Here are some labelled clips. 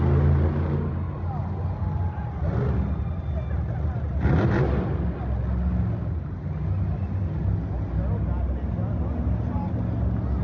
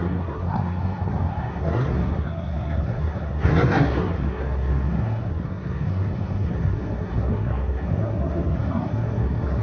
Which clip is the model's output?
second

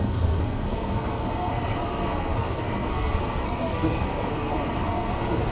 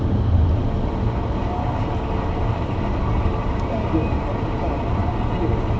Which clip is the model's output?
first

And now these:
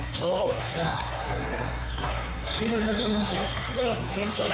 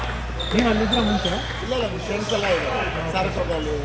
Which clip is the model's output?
first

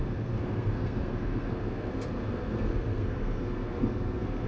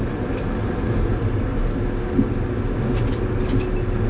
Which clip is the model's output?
first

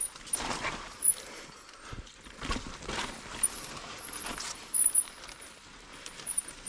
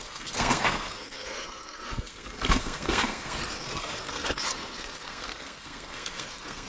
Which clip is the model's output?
second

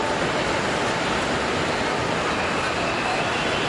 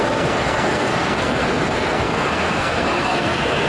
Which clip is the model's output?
second